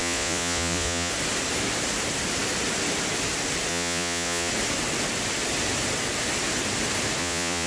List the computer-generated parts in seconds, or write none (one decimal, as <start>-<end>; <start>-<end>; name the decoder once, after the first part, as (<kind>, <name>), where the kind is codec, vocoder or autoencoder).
0.0-1.1 (vocoder, Vocos); 3.7-4.5; 7.2-7.7